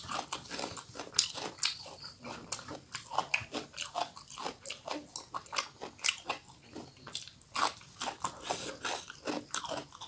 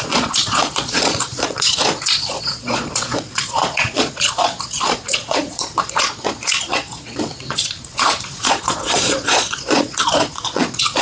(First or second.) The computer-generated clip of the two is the second